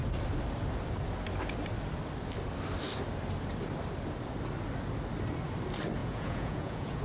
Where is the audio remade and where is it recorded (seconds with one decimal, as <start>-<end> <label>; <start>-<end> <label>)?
0.0-6.0 recorded; 6.0-7.0 remade